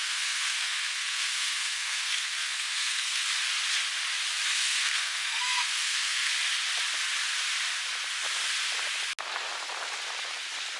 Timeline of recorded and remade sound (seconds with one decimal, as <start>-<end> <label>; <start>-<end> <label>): 0.0-3.3 remade; 3.3-4.5 recorded; 4.5-6.3 remade; 6.3-10.8 recorded